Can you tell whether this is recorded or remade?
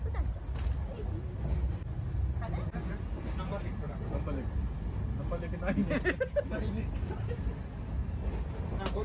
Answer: recorded